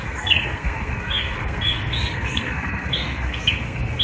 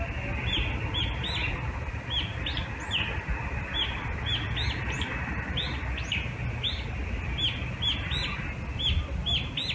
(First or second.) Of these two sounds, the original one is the second